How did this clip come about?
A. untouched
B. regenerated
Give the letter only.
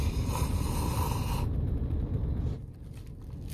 A